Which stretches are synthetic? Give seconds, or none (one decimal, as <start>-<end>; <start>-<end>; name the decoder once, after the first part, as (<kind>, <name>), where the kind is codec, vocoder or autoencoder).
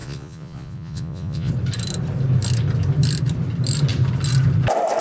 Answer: 0.0-1.5 (vocoder, Vocos)